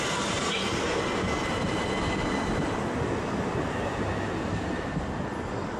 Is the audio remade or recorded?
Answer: recorded